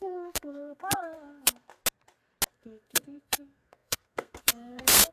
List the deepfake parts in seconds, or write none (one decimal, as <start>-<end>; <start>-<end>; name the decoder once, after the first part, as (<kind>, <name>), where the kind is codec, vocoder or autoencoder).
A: 0.0-1.8 (codec, SNAC); 2.5-5.1